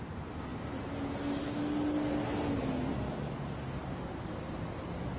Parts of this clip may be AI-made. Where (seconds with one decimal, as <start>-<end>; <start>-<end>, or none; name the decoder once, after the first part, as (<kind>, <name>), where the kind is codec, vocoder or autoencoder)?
none